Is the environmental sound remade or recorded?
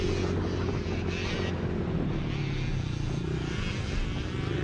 recorded